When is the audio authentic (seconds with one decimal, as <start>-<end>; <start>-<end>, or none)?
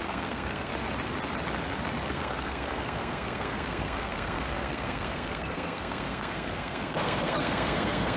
0.7-2.1